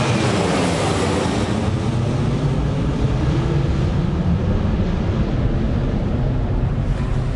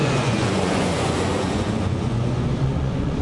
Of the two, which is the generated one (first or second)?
second